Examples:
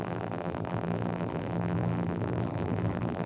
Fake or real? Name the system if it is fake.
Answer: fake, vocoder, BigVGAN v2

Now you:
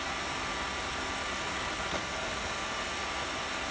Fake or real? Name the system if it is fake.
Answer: real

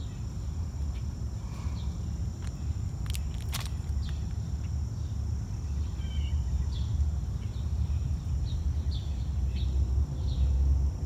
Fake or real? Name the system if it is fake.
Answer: real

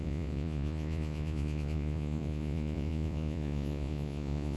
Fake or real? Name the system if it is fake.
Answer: fake, vocoder, Vocos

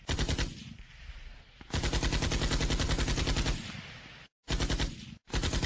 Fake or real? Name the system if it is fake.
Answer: real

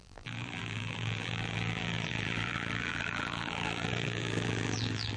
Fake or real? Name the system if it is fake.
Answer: fake, vocoder, BigVGAN v2